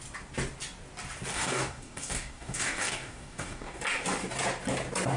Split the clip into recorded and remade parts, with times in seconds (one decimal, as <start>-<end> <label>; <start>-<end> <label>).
0.0-1.3 recorded; 1.3-3.8 remade; 3.8-5.2 recorded